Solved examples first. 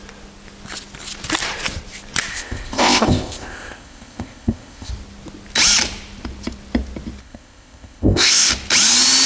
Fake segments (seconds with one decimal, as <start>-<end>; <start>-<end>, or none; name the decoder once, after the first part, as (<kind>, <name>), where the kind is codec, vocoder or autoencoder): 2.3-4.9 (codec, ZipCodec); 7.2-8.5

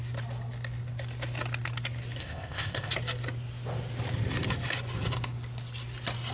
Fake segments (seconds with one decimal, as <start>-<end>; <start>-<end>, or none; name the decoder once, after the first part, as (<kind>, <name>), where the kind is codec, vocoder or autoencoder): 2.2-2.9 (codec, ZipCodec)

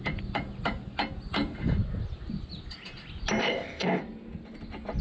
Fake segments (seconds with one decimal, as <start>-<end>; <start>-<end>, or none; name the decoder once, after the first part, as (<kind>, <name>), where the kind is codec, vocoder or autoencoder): 3.4-4.0 (codec, ZipCodec)

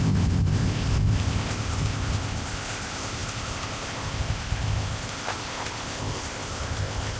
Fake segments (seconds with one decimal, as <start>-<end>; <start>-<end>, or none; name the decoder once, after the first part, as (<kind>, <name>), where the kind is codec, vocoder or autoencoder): 0.0-7.2 (codec, ZipCodec)

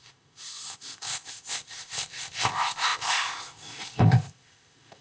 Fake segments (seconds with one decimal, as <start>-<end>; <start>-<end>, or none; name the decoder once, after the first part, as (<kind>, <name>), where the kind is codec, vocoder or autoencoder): 0.0-5.0 (codec, ZipCodec)

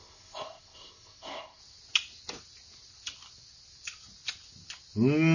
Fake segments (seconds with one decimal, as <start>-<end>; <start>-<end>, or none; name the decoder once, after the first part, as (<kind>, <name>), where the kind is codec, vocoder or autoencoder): 0.0-1.6 (codec, ZipCodec)